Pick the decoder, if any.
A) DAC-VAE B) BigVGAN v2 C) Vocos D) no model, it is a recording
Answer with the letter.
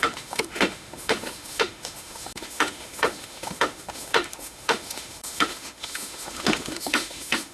A